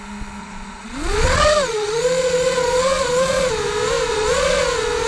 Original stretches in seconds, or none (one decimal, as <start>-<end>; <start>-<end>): 0.0-0.4; 3.5-4.1; 4.6-5.1